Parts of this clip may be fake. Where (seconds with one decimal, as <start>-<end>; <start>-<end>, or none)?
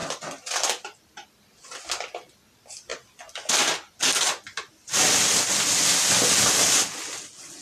none